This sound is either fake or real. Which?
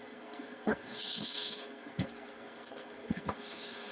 fake